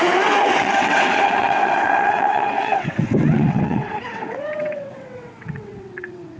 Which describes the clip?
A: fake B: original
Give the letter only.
A